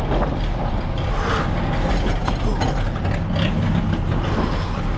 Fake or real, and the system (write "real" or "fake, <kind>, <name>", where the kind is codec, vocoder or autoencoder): real